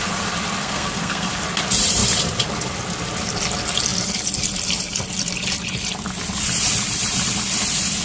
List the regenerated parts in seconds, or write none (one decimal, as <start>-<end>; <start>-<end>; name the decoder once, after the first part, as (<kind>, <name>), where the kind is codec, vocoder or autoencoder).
0.6-1.3 (codec, SNAC)